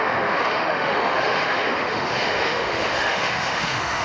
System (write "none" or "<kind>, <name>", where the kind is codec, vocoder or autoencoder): autoencoder, DAC-VAE